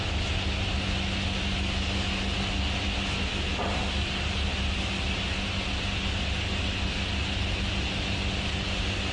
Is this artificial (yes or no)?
no